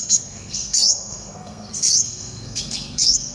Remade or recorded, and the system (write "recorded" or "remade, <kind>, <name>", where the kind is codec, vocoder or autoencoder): remade, codec, SNAC